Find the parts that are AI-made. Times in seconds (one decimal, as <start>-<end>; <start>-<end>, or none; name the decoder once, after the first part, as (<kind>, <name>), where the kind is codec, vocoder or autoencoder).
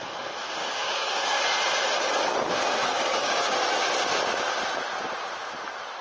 0.6-1.4 (codec, DAC); 2.8-3.5